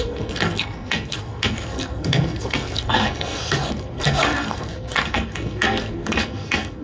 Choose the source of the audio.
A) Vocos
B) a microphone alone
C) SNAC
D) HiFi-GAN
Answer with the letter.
C